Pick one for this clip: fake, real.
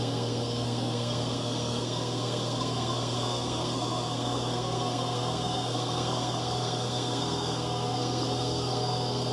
fake